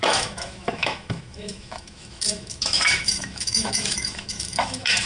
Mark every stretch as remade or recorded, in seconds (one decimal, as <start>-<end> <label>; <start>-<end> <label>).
0.0-5.1 remade